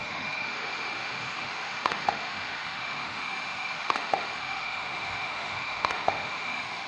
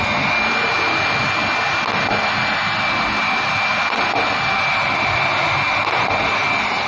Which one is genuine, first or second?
second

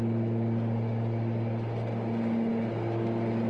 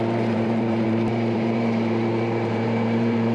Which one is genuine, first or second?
first